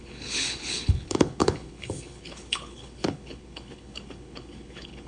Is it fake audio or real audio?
fake